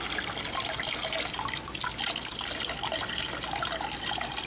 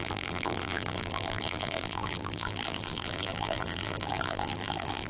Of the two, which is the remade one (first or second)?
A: second